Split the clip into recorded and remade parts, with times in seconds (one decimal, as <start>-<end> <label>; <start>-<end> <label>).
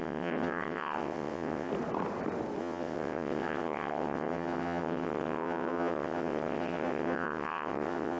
0.0-1.7 remade; 1.7-2.6 recorded; 2.6-8.2 remade